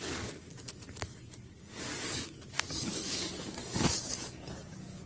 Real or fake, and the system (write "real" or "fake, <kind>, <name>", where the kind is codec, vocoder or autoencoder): fake, codec, DAC